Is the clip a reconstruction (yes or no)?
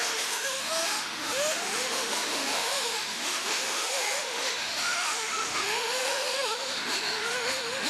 yes